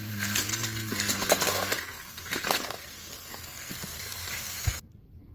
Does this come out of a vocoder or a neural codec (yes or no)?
yes